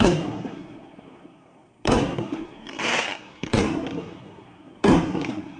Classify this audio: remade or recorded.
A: remade